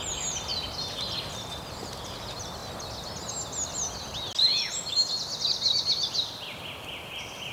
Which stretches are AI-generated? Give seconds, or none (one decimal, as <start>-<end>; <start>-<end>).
none